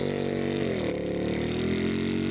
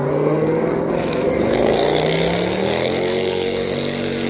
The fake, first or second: second